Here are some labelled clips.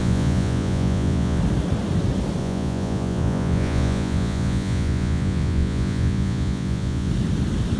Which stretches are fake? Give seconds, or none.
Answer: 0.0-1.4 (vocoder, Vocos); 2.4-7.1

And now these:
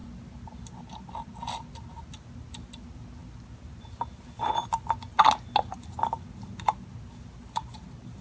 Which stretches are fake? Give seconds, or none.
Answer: none

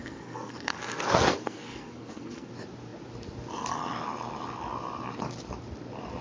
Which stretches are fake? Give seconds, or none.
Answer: 0.0-2.5 (codec, SNAC)

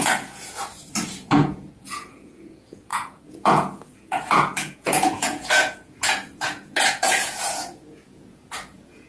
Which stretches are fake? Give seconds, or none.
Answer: 0.0-0.7 (vocoder, Vocos); 1.3-9.1

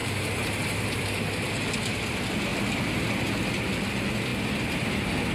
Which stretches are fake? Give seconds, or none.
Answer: 0.0-1.5 (vocoder, BigVGAN v2)

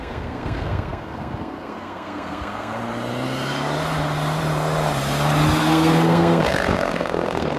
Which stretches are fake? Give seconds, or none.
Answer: 0.0-2.8 (codec, SNAC); 5.6-7.6